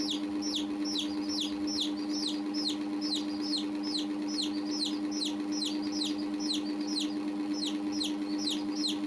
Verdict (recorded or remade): recorded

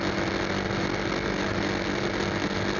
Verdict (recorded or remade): recorded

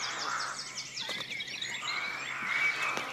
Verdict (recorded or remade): remade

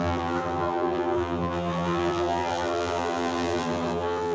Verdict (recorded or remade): remade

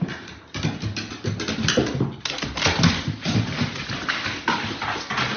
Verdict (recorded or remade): recorded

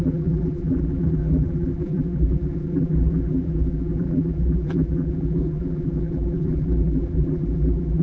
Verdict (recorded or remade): remade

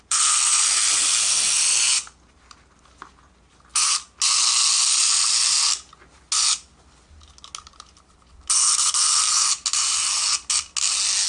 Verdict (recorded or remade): recorded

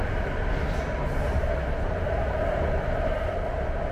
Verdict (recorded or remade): recorded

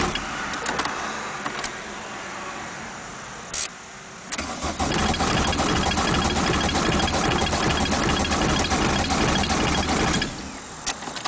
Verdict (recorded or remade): recorded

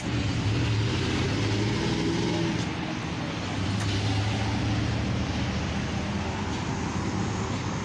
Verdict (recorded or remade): recorded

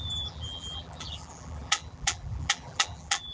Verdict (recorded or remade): remade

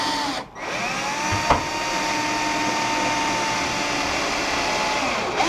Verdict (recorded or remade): recorded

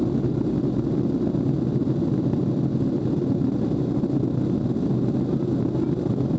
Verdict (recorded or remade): recorded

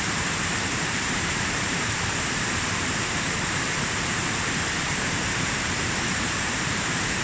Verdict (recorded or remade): remade